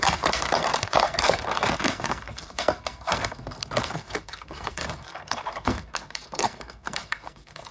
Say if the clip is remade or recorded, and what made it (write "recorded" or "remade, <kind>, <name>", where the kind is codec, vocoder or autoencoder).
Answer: remade, codec, SNAC